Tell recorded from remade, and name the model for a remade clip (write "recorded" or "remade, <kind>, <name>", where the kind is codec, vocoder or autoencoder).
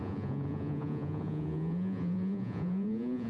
remade, vocoder, Vocos